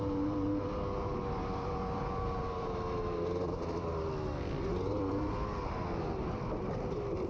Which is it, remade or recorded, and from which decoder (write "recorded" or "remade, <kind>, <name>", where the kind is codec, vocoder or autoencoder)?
recorded